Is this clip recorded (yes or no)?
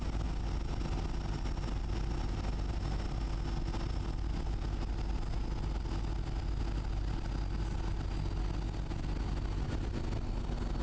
yes